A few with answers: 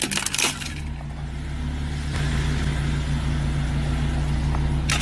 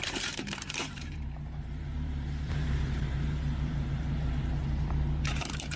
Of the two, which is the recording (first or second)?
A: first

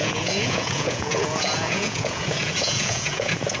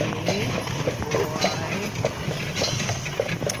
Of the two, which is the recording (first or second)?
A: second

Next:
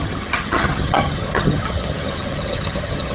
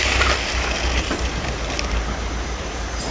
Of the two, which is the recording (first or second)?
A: second